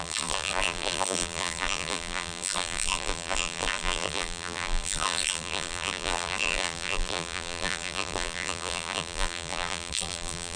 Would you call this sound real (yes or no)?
no